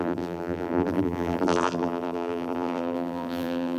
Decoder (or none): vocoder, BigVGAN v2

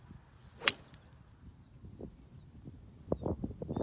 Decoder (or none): none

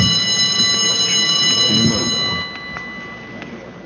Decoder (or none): none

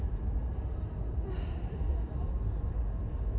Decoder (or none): none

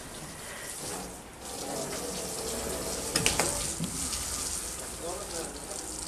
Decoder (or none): none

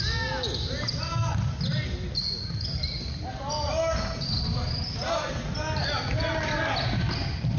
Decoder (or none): none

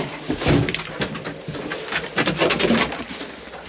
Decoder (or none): vocoder, BigVGAN v2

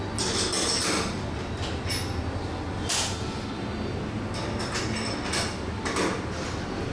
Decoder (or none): none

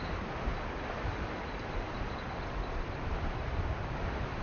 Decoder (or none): vocoder, BigVGAN v2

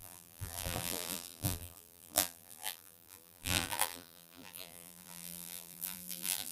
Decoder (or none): vocoder, BigVGAN v2